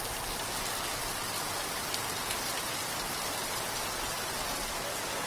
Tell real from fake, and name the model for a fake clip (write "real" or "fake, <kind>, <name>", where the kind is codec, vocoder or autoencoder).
real